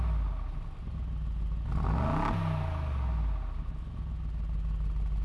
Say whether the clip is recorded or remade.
recorded